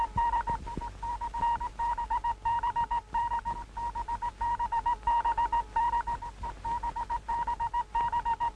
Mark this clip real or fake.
real